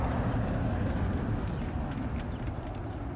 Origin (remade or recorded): recorded